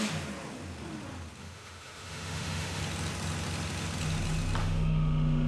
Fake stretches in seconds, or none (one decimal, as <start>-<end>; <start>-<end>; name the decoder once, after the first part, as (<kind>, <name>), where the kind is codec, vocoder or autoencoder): 1.4-2.8 (autoencoder, DAC-VAE); 4.6-5.5